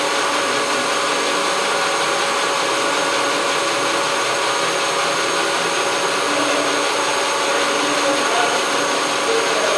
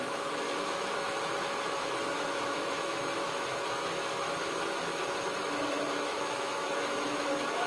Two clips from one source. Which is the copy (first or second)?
second